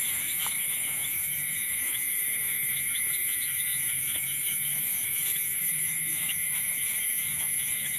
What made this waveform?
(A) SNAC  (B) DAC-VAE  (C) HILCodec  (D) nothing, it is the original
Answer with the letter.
B